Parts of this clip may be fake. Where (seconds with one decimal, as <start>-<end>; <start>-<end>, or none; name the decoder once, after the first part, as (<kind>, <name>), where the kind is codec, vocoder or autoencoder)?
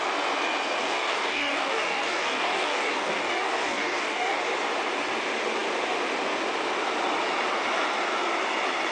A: 0.8-4.4 (codec, DAC)